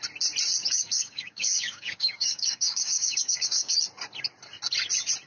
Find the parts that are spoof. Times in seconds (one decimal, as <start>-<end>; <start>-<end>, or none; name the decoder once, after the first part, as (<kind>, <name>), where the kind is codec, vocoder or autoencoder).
0.6-3.8 (codec, DAC)